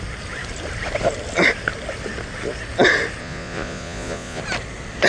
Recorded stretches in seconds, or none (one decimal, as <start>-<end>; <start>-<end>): 0.0-3.2; 4.4-5.1